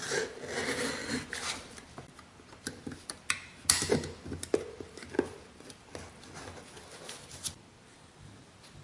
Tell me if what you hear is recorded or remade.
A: recorded